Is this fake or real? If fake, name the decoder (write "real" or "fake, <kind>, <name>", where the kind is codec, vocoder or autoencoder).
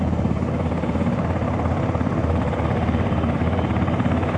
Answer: fake, vocoder, BigVGAN v2